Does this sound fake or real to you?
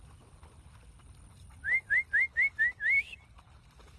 real